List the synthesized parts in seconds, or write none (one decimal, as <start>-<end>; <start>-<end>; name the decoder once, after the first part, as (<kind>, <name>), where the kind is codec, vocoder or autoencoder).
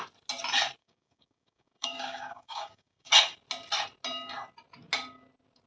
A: 0.8-3.1 (codec, DAC)